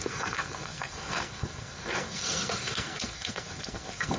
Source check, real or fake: fake